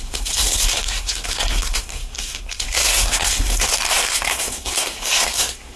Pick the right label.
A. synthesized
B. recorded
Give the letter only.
A